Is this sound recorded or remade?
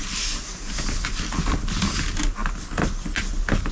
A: recorded